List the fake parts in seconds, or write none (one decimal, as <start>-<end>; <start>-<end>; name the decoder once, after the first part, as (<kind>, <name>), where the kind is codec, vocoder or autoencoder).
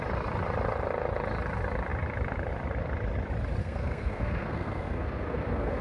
3.6-5.8 (codec, SNAC)